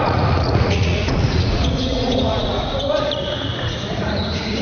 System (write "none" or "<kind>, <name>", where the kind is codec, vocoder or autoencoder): vocoder, Vocos